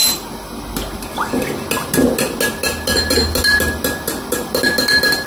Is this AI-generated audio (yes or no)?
no